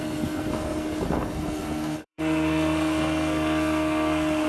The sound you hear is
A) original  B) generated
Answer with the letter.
B